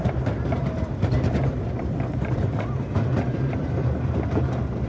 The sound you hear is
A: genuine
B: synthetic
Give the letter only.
B